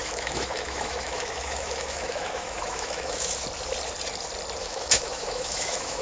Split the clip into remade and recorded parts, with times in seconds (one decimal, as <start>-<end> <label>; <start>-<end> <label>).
0.0-3.3 remade; 3.3-4.6 recorded; 4.6-6.0 remade